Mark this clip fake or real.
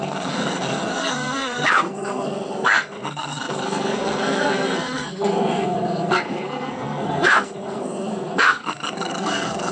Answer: fake